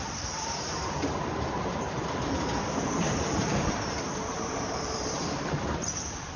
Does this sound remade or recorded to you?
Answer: remade